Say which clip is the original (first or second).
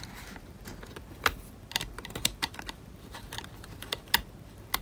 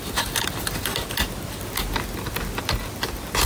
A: second